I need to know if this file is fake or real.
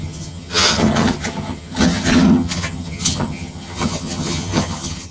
fake